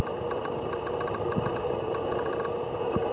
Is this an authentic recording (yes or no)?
yes